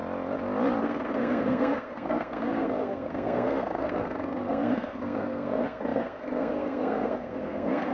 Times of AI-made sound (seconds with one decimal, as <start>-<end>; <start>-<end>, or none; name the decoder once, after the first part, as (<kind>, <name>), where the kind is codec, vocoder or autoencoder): 0.8-7.9 (codec, SNAC)